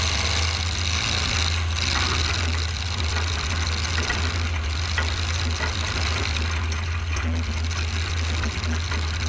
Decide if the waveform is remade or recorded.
recorded